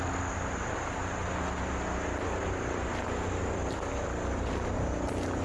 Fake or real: real